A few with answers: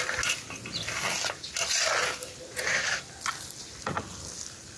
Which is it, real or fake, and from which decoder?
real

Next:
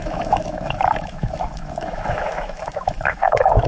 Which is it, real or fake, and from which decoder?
fake, autoencoder, DAC-VAE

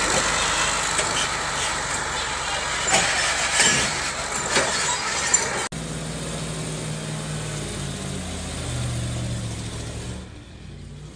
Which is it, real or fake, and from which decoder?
real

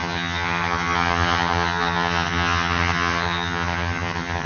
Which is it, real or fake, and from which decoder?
fake, vocoder, HiFi-GAN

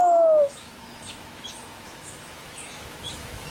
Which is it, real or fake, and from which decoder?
fake, autoencoder, DAC-VAE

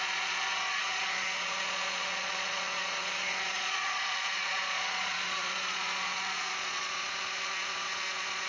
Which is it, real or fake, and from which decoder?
fake, vocoder, Vocos